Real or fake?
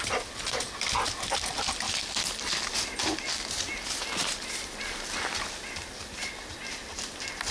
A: real